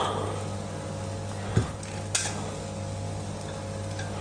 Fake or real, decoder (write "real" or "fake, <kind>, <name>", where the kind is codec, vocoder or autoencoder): real